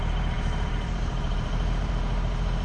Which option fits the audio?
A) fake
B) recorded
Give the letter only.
A